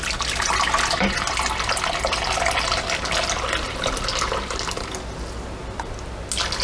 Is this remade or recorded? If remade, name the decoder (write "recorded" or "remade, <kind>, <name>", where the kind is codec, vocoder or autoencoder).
recorded